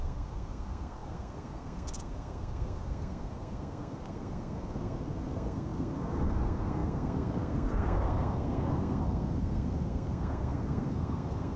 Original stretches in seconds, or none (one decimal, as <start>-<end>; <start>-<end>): none